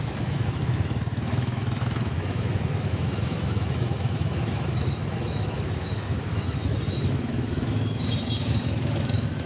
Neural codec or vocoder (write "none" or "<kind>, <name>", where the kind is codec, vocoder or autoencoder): autoencoder, DAC-VAE